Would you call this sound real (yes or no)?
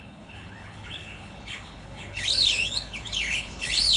no